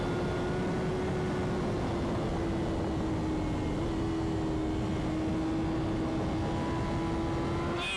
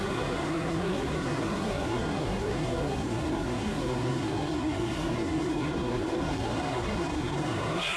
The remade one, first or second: second